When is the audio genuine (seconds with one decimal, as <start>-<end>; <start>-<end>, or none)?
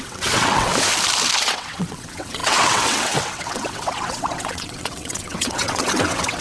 0.7-1.4